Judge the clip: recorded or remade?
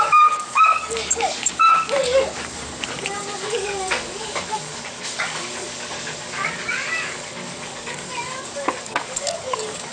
remade